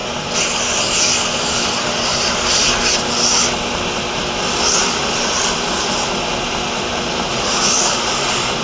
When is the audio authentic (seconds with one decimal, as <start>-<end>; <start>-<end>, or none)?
0.0-7.3; 8.1-8.6